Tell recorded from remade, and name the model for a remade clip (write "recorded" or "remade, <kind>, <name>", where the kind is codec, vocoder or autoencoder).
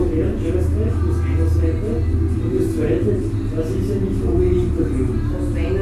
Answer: recorded